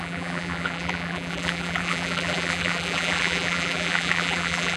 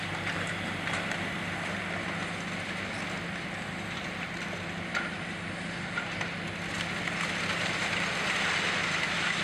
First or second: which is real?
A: second